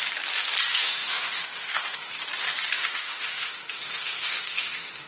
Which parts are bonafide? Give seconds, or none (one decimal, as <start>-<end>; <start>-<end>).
0.0-0.7; 2.2-2.8